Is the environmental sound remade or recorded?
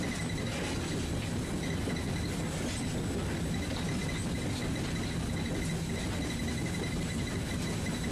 recorded